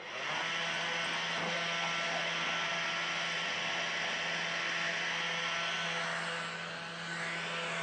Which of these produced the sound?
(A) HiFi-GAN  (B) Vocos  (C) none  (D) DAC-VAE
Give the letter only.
C